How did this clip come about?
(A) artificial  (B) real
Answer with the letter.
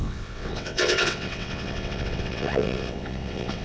A